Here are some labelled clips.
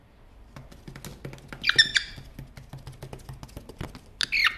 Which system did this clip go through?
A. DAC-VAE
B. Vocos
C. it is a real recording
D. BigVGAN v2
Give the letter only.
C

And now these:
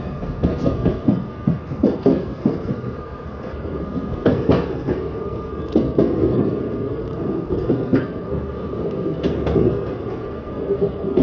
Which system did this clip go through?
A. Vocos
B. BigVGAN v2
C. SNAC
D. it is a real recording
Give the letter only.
C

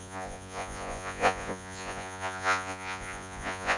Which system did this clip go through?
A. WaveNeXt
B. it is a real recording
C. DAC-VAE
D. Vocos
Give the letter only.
D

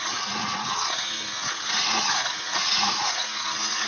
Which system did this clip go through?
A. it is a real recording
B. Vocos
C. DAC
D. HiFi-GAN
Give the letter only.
B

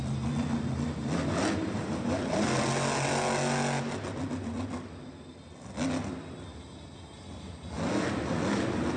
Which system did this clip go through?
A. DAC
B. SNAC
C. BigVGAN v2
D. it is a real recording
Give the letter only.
D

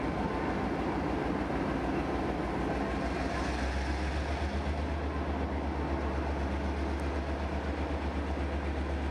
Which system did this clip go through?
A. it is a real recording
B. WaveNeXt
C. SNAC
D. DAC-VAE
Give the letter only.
A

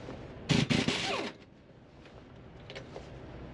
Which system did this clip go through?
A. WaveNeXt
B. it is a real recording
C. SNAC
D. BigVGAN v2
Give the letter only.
B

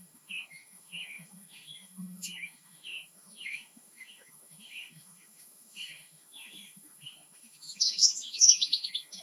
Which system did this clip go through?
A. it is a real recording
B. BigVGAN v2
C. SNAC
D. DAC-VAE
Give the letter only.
D